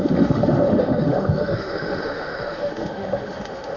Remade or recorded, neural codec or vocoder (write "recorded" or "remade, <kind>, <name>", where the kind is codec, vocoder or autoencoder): remade, autoencoder, DAC-VAE